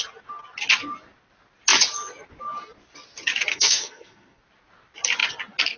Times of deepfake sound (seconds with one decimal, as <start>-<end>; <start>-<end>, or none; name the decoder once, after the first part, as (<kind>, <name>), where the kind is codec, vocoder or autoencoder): 3.5-4.4 (codec, SNAC)